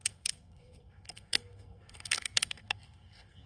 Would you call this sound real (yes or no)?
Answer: no